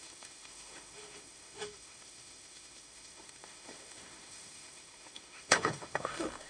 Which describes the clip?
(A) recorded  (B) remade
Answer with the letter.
B